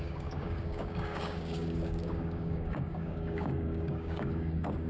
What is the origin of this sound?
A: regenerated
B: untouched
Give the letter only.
A